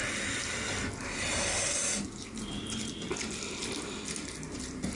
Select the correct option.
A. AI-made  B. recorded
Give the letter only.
B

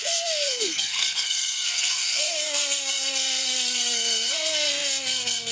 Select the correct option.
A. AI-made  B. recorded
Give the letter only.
A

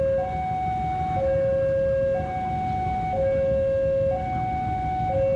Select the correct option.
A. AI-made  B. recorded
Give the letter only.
B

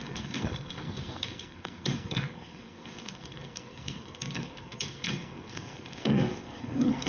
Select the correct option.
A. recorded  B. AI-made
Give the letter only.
B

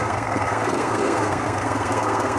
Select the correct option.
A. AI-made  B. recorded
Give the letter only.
A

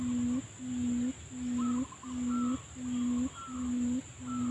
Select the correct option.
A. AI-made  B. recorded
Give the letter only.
B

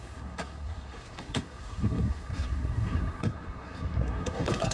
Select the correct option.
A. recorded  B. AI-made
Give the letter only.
B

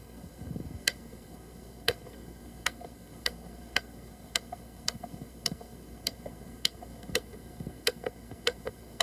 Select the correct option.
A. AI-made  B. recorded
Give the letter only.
A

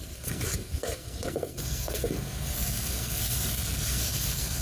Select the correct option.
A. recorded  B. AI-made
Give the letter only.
B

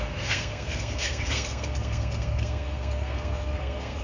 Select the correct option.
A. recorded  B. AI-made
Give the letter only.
B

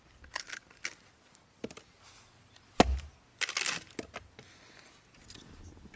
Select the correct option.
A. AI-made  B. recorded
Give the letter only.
B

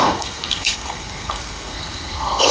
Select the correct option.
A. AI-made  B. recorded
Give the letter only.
A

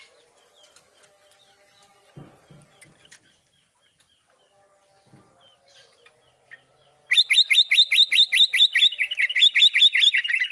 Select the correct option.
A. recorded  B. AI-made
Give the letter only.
A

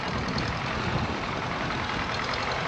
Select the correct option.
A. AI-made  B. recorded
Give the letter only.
B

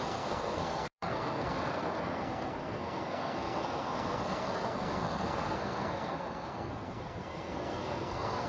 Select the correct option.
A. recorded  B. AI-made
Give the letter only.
B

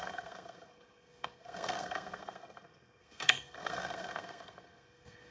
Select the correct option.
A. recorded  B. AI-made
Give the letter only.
B